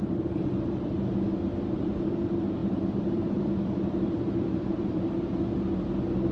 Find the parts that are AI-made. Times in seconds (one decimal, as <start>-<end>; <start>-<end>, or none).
2.6-5.0